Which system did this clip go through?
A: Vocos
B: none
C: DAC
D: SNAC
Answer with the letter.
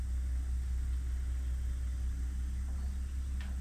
B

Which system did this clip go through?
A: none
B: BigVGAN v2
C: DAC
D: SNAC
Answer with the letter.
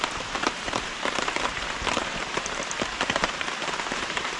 B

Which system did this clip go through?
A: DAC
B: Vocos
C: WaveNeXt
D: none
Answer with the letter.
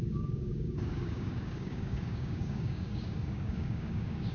A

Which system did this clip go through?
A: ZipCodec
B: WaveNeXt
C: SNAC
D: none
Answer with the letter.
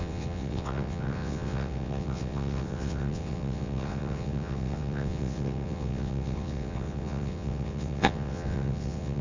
B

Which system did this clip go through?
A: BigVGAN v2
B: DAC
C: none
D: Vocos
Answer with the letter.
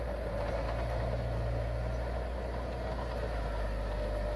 C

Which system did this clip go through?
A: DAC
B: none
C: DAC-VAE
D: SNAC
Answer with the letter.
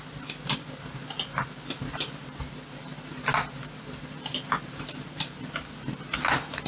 B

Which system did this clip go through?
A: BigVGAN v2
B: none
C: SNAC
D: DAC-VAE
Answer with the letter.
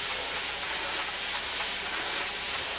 B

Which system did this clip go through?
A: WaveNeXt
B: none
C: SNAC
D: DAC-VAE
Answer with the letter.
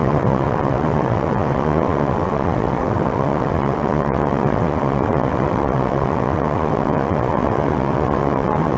A